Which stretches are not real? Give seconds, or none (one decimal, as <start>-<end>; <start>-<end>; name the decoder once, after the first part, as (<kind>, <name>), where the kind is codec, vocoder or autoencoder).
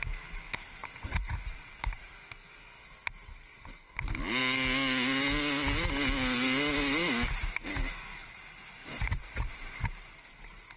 0.8-2.1 (vocoder, Vocos); 8.8-9.9